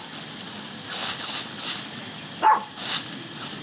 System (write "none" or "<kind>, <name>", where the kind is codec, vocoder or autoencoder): none